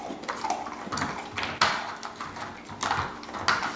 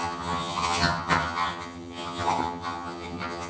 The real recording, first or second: first